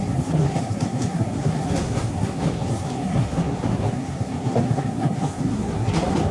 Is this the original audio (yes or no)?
no